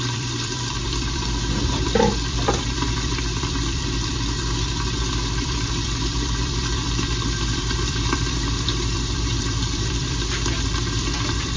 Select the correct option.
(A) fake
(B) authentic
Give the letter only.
A